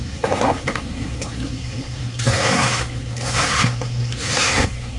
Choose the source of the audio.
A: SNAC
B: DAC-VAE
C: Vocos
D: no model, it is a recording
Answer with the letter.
A